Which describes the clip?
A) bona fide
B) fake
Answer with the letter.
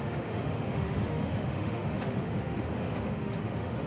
B